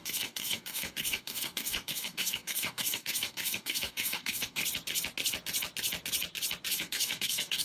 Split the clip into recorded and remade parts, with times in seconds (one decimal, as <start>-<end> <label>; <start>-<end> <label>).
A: 0.0-4.6 remade; 4.6-6.7 recorded; 6.7-7.6 remade